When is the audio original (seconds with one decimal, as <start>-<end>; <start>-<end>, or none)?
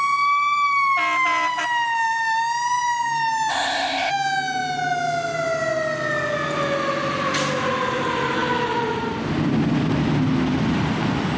0.0-3.5; 4.1-11.4